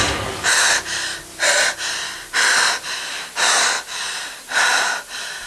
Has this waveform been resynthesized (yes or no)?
no